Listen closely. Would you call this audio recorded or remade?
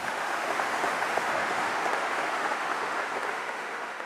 remade